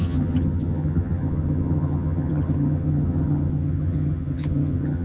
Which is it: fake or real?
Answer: fake